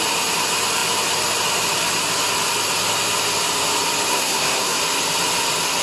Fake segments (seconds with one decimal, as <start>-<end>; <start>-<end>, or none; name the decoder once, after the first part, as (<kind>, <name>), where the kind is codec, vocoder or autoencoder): 4.1-4.8 (codec, SNAC)

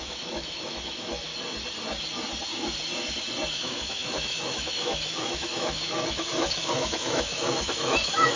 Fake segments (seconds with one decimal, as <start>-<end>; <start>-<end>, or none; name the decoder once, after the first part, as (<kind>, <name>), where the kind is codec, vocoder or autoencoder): 0.0-1.3 (autoencoder, DAC-VAE); 3.5-8.4

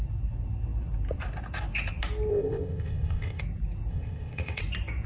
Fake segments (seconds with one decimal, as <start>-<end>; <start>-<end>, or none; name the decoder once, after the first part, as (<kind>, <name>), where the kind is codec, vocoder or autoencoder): 2.3-3.4 (codec, ZipCodec); 3.9-4.6

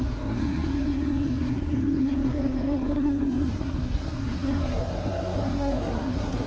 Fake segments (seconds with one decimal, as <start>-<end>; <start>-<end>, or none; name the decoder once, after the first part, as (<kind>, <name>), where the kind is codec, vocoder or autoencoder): 0.0-6.5 (codec, SNAC)

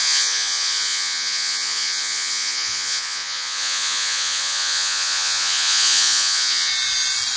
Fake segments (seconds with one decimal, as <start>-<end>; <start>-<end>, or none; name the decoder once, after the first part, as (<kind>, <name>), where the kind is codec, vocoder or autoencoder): 0.0-6.7 (vocoder, Vocos)

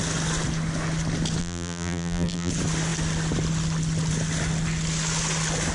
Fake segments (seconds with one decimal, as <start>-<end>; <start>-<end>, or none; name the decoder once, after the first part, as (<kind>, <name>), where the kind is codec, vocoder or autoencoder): 1.4-2.5 (vocoder, BigVGAN v2)